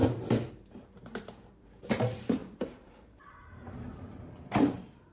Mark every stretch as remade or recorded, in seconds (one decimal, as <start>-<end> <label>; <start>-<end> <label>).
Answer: 0.0-0.5 recorded; 0.5-5.1 remade